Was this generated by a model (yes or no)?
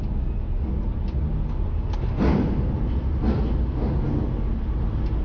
no